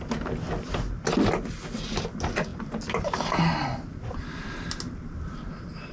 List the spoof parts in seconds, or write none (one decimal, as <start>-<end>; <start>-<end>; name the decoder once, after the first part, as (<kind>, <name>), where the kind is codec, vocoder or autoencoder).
none